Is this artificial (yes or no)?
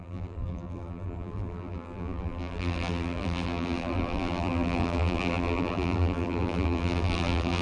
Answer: yes